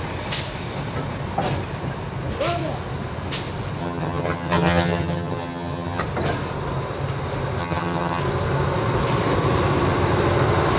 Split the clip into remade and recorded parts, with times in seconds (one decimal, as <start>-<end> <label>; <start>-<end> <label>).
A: 0.0-3.8 recorded; 3.8-6.0 remade; 6.0-7.6 recorded; 7.6-8.2 remade; 8.2-10.8 recorded